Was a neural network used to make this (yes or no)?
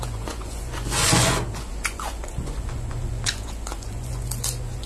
yes